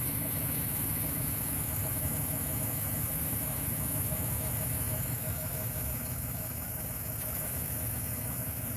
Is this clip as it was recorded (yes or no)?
no